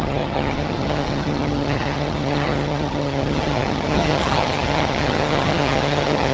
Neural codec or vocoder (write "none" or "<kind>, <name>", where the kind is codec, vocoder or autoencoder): vocoder, HiFi-GAN